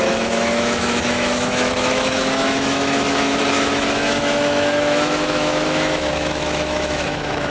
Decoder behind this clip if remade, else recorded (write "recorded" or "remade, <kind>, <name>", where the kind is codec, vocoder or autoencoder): remade, autoencoder, DAC-VAE